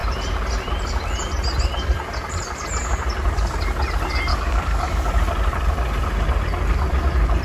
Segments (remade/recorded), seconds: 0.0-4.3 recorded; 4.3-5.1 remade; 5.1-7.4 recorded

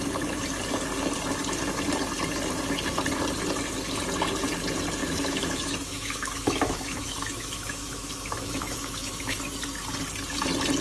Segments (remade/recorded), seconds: 0.0-5.0 recorded; 5.0-9.4 remade; 9.4-10.8 recorded

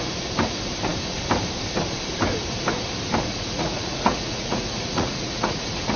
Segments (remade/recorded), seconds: 0.0-3.3 recorded; 3.3-6.0 remade

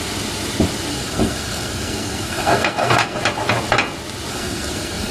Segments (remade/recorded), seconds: 0.0-0.9 recorded; 0.9-3.2 remade; 3.2-4.3 recorded; 4.3-5.1 remade

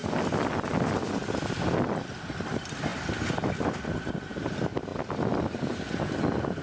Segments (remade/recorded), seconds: 0.0-6.6 recorded